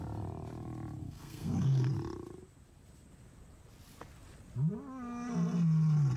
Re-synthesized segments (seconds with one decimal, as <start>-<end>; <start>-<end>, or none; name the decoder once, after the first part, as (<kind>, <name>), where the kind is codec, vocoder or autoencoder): 1.0-1.9 (codec, SNAC)